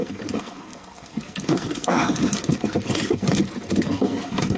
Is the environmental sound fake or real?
fake